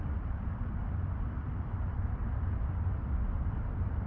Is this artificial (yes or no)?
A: yes